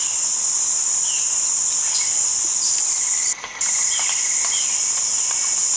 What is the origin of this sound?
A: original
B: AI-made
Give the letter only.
A